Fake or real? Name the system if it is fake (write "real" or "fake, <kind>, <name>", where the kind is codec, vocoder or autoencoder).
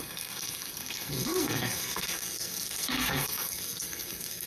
fake, codec, SNAC